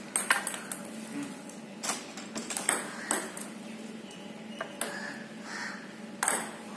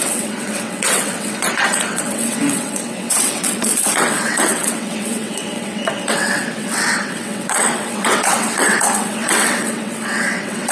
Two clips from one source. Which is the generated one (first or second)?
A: second